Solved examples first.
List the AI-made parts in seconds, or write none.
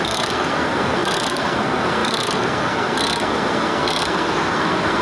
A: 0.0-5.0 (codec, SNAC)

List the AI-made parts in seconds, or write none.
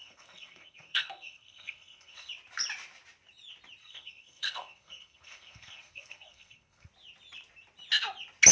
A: 0.0-2.3 (codec, SNAC); 3.8-6.9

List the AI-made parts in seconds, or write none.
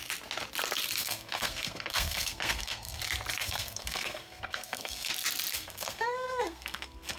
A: 1.0-3.0 (codec, SNAC); 3.4-5.1; 5.5-7.2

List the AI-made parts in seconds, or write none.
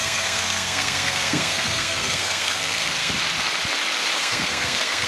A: 0.0-3.1 (codec, SNAC); 4.2-5.1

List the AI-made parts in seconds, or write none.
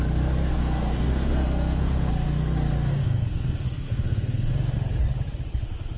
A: 0.4-2.1 (codec, SNAC); 2.9-4.5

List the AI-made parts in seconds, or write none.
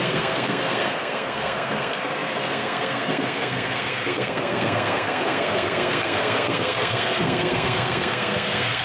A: 0.0-8.8 (codec, SNAC)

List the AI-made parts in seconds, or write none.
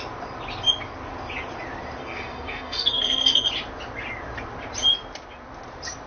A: 2.0-3.5 (codec, SNAC)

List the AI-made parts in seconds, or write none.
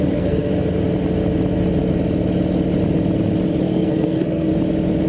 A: 0.0-0.5 (codec, SNAC); 3.6-4.5